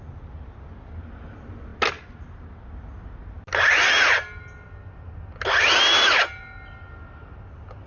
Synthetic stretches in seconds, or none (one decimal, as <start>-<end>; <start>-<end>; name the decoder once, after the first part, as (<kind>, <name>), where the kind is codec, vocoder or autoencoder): none